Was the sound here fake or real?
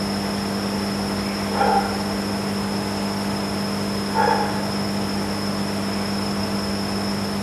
real